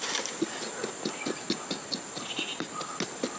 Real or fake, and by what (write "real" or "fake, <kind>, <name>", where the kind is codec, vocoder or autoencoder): real